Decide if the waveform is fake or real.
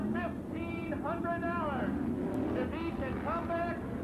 real